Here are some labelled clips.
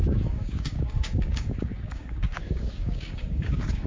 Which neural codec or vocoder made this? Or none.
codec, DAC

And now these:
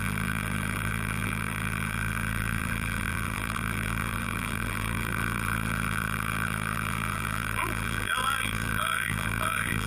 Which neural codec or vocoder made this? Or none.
vocoder, BigVGAN v2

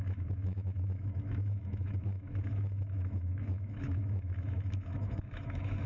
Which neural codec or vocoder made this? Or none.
autoencoder, DAC-VAE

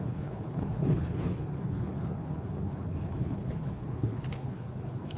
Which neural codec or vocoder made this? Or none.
codec, HILCodec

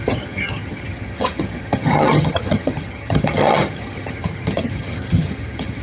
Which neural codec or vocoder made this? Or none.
vocoder, HiFi-GAN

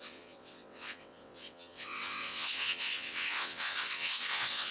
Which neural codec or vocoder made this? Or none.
vocoder, WaveNeXt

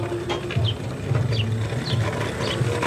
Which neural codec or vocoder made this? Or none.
none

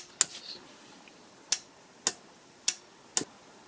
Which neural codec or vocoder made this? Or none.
none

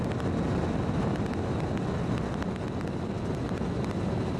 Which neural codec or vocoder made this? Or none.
none